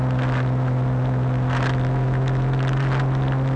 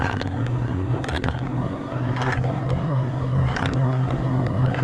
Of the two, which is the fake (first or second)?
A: second